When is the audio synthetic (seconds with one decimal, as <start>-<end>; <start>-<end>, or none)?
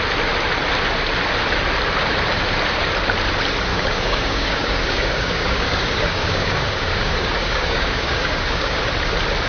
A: 3.7-8.8